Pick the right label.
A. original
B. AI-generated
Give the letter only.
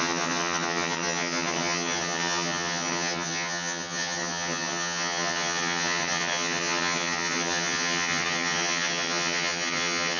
B